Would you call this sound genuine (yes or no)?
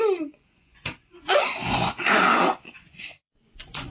no